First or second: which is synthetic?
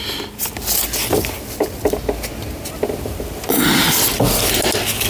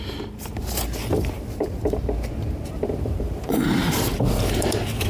second